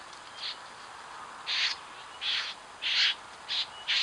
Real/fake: real